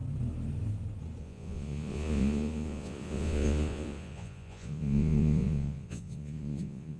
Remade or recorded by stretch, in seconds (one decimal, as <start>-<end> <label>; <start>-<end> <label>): 0.0-1.2 recorded; 1.2-7.0 remade